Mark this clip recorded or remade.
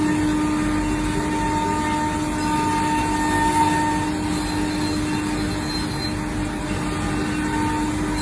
recorded